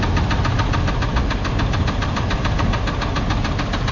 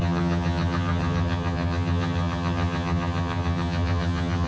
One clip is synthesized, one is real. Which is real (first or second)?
first